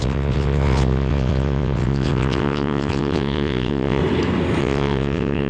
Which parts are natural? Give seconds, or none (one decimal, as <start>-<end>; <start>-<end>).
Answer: 4.0-4.6